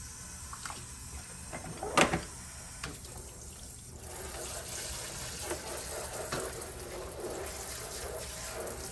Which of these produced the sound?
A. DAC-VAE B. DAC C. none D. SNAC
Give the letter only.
C